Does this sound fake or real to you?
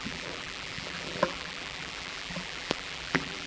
fake